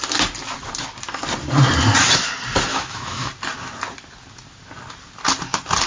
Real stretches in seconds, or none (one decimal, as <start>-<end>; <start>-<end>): 0.0-2.7; 3.3-5.9